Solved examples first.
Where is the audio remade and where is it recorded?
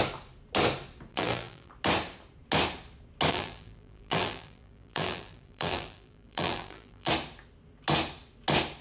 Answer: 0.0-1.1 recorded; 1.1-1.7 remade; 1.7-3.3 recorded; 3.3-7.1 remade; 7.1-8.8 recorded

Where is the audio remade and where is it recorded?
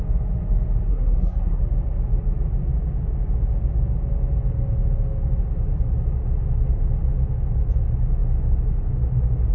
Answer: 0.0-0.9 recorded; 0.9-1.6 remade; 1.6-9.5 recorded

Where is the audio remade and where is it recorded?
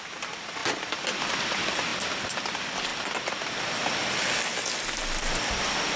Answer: 0.0-6.0 recorded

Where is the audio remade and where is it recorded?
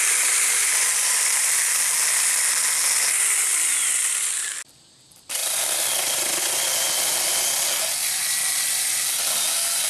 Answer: 0.0-3.5 recorded; 3.5-4.1 remade; 4.1-5.4 recorded; 5.4-6.4 remade; 6.4-9.9 recorded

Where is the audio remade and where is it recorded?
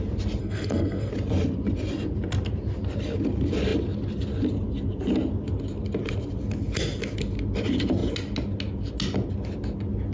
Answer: 0.0-0.4 recorded; 0.4-1.1 remade; 1.1-10.1 recorded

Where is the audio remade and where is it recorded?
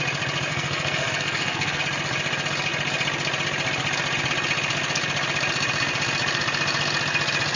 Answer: 0.0-0.5 recorded; 0.5-1.8 remade; 1.8-7.6 recorded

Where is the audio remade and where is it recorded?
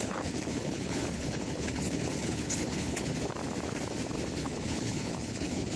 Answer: 0.0-3.1 remade; 3.1-4.4 recorded; 4.4-5.8 remade